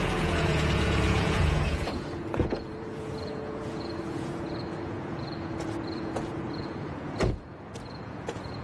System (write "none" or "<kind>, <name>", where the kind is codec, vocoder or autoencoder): vocoder, Vocos